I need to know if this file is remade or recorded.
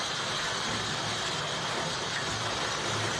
recorded